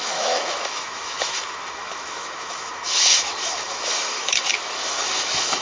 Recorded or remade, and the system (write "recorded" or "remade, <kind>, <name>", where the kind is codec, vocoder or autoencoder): remade, autoencoder, DAC-VAE